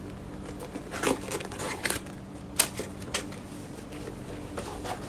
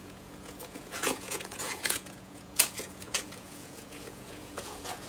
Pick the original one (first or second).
first